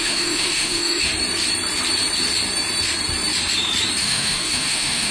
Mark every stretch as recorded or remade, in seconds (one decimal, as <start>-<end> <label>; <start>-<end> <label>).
0.0-1.1 remade; 1.1-4.0 recorded; 4.0-5.1 remade